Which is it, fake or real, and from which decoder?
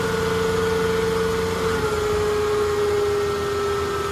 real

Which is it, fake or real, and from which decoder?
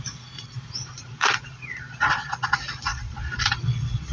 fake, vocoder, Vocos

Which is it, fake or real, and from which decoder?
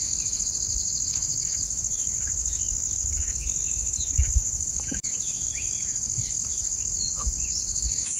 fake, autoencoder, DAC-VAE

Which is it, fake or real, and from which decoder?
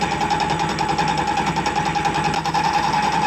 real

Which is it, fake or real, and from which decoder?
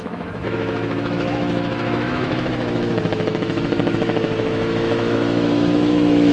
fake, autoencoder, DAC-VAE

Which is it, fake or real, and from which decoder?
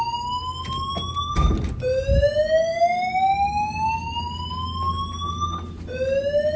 real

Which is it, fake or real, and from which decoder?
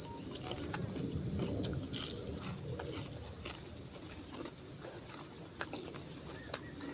real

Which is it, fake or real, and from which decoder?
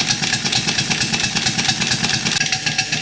real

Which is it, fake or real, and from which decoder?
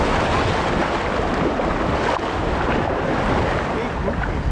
real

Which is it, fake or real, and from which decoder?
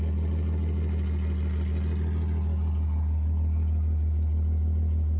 real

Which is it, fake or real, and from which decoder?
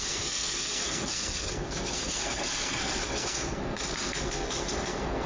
fake, codec, SNAC